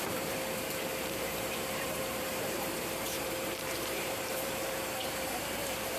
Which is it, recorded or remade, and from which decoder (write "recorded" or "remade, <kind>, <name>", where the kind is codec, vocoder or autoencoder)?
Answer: remade, vocoder, BigVGAN v2